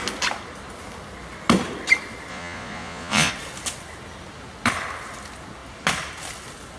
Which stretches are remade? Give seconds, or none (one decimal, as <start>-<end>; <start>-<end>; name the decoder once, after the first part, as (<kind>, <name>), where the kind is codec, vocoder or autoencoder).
2.3-3.3 (vocoder, Vocos)